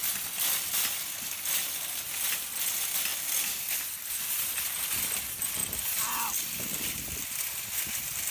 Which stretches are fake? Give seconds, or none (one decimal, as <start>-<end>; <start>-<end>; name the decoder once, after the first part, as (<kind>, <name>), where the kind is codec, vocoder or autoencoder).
none